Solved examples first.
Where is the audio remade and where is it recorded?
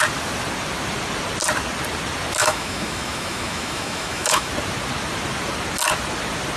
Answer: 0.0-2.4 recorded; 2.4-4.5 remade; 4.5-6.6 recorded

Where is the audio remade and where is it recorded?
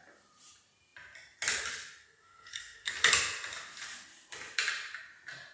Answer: 0.0-2.0 recorded; 2.0-2.9 remade; 2.9-5.5 recorded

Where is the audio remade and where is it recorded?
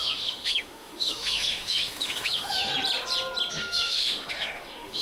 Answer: 0.0-2.7 remade; 2.7-3.5 recorded; 3.5-5.0 remade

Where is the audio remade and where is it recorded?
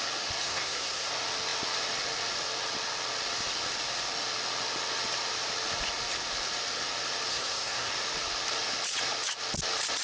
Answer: 0.0-0.4 recorded; 0.4-1.1 remade; 1.1-7.3 recorded; 7.3-7.9 remade; 7.9-10.0 recorded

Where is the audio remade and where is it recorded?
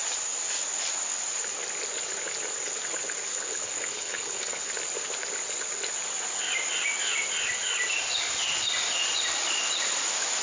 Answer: 0.0-3.3 recorded; 3.3-4.7 remade; 4.7-10.4 recorded